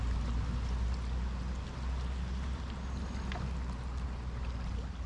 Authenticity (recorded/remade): recorded